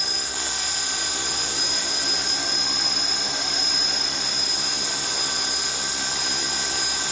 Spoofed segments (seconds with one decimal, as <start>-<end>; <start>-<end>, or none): none